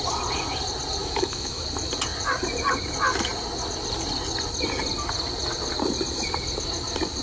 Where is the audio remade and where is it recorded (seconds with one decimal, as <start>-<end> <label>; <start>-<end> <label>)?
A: 0.0-1.0 recorded; 1.0-1.6 remade; 1.6-7.2 recorded